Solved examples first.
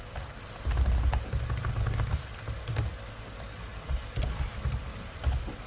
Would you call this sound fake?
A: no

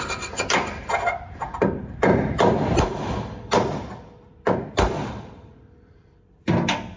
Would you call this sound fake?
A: yes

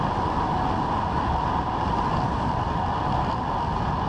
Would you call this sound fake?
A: no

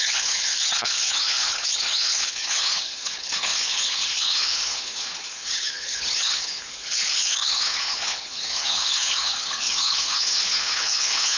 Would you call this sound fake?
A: yes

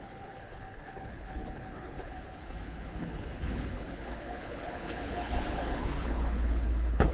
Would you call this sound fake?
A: yes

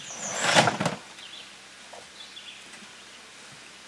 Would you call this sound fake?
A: no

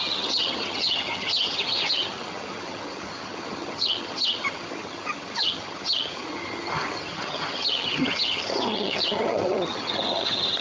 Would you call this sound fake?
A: yes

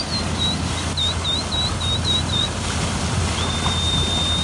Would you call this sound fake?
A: no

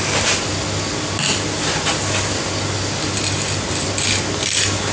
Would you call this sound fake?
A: no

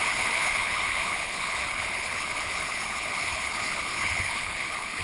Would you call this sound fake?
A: yes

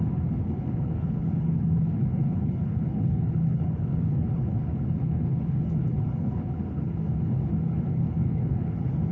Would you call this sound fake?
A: yes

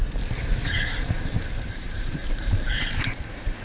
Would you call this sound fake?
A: yes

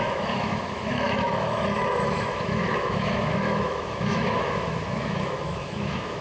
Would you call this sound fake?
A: yes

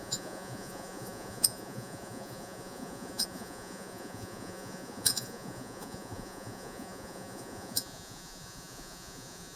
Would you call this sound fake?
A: yes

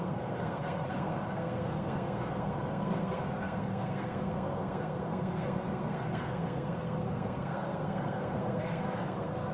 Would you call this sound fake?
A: yes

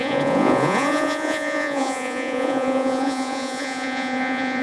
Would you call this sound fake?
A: yes